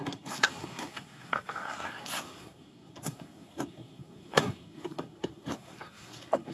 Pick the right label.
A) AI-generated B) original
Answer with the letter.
A